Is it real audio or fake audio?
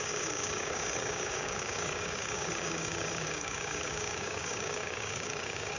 fake